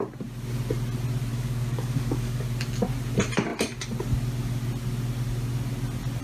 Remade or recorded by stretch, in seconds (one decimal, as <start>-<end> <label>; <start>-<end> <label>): 0.0-1.3 recorded; 1.3-2.4 remade; 2.4-6.2 recorded